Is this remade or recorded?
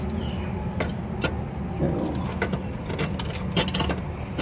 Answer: recorded